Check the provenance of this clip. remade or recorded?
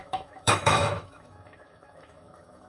remade